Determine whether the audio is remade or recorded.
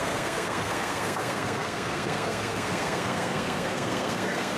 remade